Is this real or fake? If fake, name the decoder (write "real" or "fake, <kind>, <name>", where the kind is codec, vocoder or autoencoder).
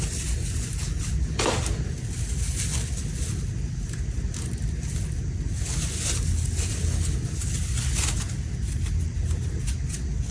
real